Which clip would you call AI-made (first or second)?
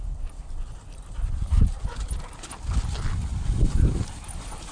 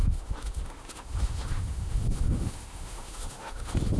second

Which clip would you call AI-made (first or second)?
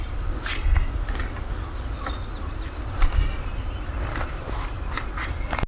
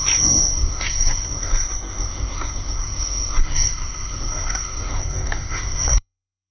second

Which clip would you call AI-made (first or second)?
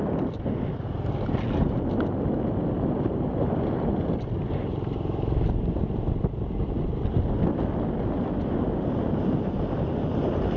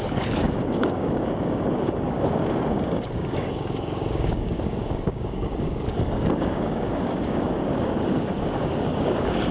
second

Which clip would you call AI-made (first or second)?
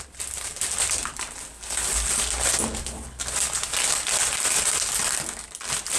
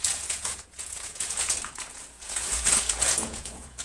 second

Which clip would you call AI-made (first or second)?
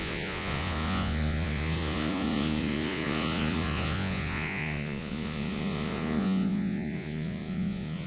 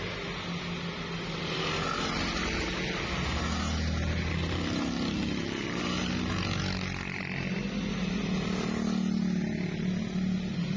first